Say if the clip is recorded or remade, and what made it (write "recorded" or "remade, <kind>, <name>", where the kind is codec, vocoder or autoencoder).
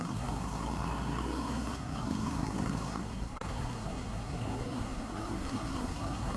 remade, codec, SNAC